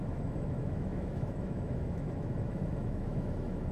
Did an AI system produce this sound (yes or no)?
yes